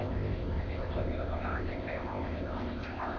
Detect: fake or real fake